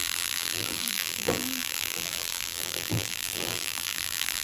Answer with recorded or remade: remade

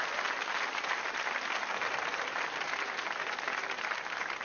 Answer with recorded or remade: recorded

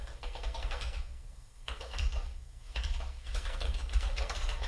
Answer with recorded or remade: remade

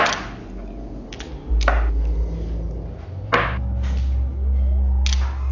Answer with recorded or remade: recorded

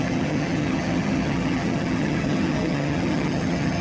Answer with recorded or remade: remade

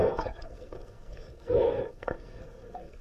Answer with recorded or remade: remade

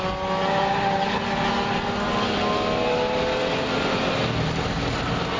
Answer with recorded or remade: recorded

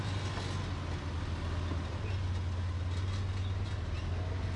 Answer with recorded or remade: recorded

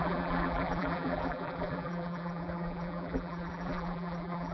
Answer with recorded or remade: remade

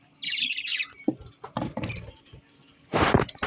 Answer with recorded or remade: recorded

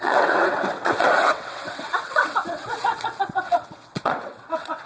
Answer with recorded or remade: remade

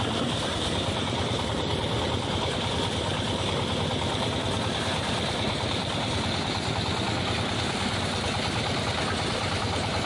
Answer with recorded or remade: recorded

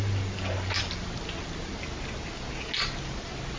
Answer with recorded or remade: recorded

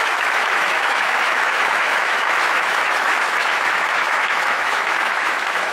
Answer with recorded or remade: remade